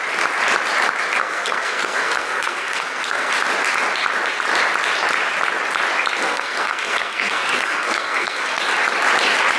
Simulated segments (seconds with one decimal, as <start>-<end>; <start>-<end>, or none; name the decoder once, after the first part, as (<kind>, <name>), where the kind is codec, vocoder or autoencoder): 1.2-3.3 (codec, SNAC); 6.2-8.6